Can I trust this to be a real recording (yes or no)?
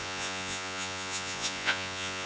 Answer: no